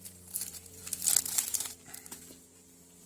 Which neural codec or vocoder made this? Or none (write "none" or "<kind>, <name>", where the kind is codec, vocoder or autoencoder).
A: vocoder, BigVGAN v2